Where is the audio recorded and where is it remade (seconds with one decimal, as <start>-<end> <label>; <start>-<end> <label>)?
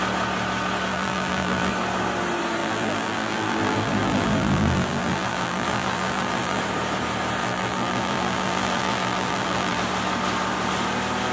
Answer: 0.0-0.9 recorded; 0.9-1.7 remade; 1.7-2.6 recorded; 2.6-6.6 remade; 6.6-7.4 recorded; 7.4-9.8 remade; 9.8-11.3 recorded